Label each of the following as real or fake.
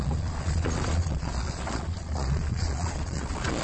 fake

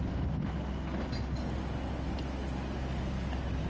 real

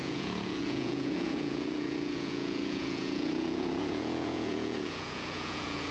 fake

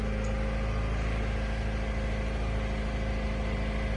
real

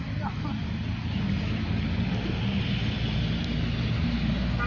real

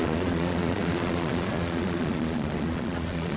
fake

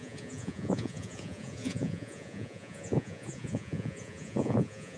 fake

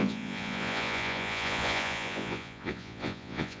fake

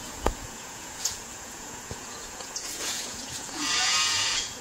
fake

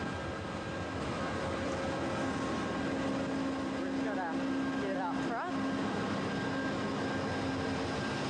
real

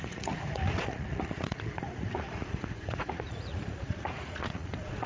fake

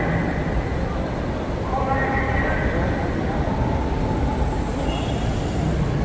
real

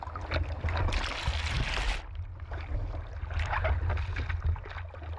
real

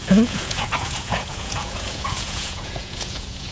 fake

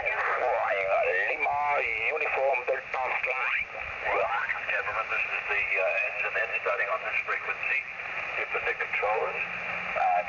real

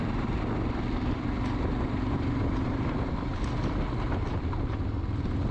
real